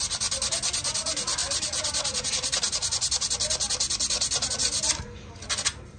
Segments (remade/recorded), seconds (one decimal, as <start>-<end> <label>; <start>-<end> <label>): 0.0-6.0 recorded